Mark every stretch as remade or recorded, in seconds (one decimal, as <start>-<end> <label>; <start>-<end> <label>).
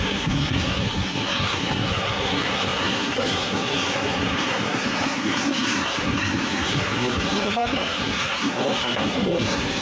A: 0.0-9.8 remade